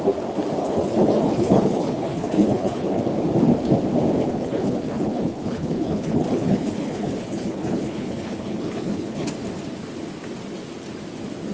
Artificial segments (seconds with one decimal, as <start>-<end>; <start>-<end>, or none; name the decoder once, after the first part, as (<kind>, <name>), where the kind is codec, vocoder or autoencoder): 0.6-3.0 (codec, HILCodec); 4.2-9.3